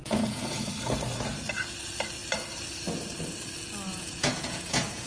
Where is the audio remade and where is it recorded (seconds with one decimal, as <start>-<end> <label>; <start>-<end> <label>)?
0.0-0.7 remade; 0.7-3.9 recorded; 3.9-5.1 remade